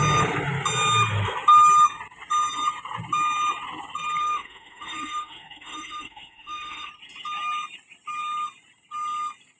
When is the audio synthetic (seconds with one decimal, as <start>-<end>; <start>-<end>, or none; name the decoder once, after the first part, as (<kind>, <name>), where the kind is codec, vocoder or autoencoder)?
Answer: 4.2-6.9 (autoencoder, DAC-VAE)